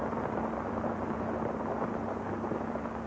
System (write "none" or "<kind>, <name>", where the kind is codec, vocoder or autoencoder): none